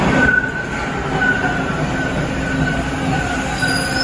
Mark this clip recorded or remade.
recorded